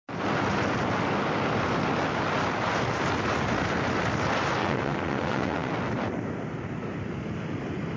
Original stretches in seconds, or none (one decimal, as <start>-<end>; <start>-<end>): 0.0-4.6; 5.7-8.0